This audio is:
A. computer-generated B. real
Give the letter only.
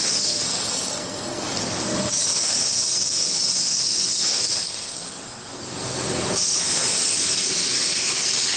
A